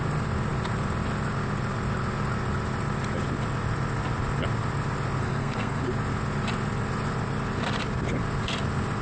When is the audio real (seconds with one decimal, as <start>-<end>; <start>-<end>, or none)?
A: 0.0-5.2; 5.8-9.0